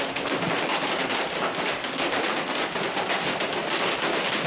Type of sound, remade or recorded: recorded